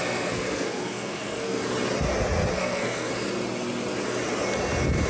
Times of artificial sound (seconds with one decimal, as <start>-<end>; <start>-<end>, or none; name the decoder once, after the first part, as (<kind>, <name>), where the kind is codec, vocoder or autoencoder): 0.0-1.6 (codec, SNAC); 2.5-3.1